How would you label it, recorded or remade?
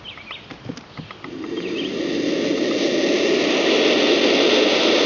recorded